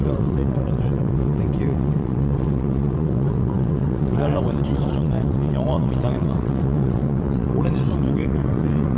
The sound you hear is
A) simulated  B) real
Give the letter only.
A